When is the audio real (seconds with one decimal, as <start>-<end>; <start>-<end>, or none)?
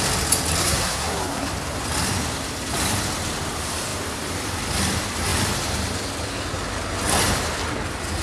0.0-0.6; 1.5-8.2